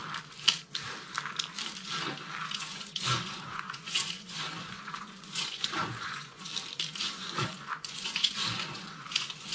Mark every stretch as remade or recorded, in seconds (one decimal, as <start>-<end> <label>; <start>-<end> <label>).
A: 0.0-2.4 recorded; 2.4-6.5 remade; 6.5-7.0 recorded; 7.0-9.5 remade